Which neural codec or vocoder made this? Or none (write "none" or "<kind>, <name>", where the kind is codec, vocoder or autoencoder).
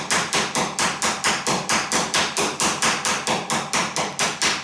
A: none